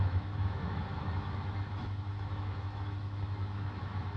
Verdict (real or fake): fake